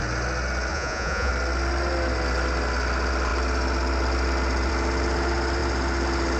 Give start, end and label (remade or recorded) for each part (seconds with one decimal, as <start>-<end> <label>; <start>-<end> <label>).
0.0-0.7 recorded; 0.7-1.3 remade; 1.3-6.4 recorded